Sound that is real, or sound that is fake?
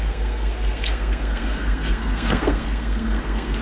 fake